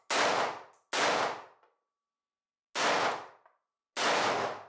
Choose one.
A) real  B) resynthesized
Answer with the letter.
A